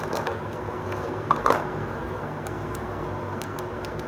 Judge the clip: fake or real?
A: fake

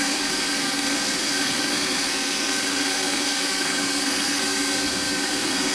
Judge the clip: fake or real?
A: fake